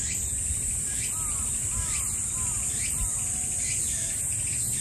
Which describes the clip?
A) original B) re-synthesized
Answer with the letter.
A